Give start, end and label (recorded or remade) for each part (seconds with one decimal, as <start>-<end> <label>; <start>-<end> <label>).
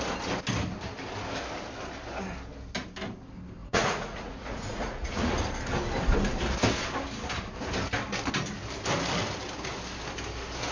0.0-3.6 recorded; 3.6-5.3 remade; 5.3-10.7 recorded